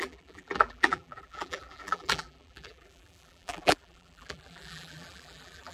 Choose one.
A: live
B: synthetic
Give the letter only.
B